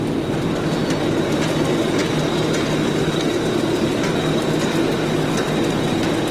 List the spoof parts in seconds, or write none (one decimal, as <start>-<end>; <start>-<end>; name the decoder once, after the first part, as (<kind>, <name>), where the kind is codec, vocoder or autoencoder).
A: none